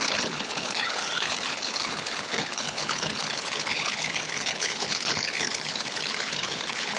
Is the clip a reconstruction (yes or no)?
yes